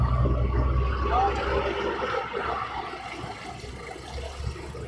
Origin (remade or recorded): recorded